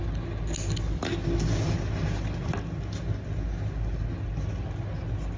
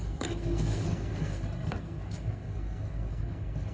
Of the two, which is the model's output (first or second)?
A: second